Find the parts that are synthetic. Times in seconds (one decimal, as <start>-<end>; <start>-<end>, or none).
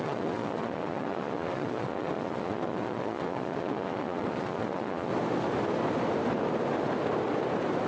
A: 0.0-5.1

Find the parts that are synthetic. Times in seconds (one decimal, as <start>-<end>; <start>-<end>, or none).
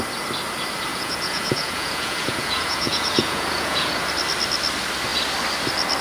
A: 0.9-4.0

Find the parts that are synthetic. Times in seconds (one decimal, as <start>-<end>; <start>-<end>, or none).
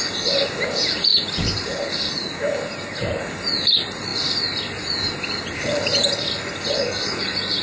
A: none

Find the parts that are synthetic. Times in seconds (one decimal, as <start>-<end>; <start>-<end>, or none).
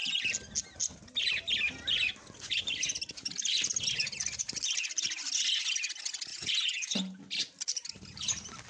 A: 6.3-7.2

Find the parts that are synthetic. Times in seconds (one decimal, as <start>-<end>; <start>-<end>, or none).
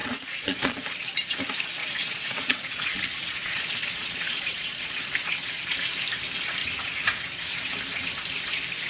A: 0.0-0.9; 1.8-5.1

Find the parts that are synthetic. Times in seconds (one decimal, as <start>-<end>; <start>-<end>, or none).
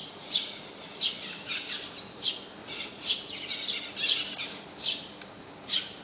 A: 0.0-0.6; 2.6-3.1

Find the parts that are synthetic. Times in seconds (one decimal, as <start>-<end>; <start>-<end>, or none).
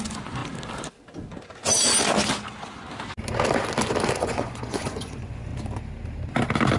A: 0.0-0.4; 4.2-5.5